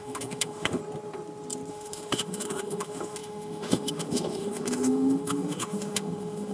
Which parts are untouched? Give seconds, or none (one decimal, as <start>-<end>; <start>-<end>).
0.8-1.7